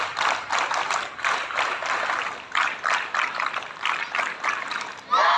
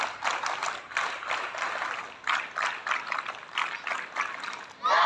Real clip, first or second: second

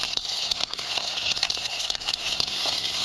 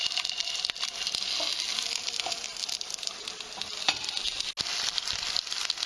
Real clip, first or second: second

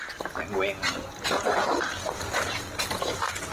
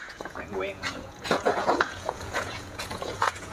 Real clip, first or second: first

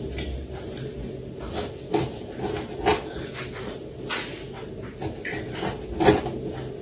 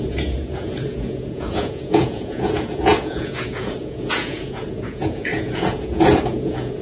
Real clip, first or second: first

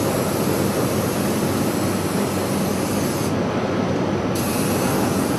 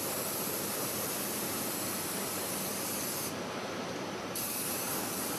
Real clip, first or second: first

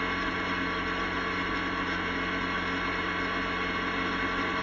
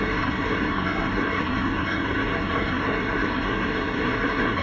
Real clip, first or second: first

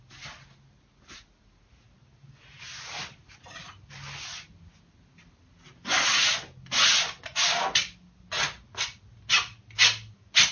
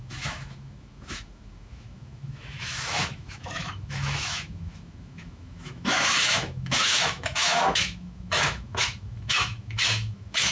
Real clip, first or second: first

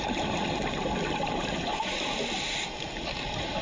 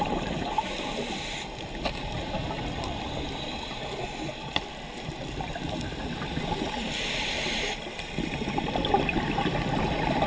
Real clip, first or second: first